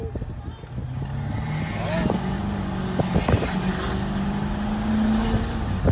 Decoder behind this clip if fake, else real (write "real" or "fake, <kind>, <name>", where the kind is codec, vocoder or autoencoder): real